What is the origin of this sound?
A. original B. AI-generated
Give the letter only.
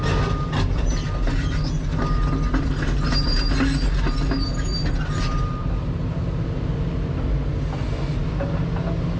A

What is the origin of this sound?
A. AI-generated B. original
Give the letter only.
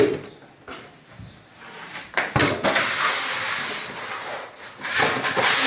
B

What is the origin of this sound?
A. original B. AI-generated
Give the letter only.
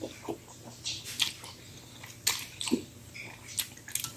A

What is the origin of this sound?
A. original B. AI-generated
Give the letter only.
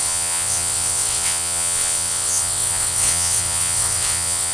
B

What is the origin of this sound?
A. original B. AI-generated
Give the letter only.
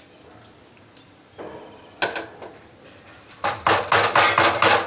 A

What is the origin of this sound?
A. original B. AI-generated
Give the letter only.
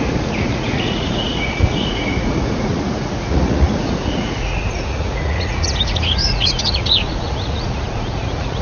B